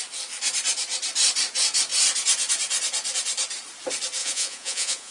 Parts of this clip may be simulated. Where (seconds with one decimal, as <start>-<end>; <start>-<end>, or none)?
4.2-5.1